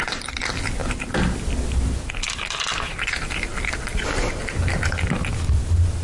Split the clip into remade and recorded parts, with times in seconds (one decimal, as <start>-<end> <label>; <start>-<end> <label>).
0.0-6.0 recorded